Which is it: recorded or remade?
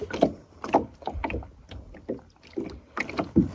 recorded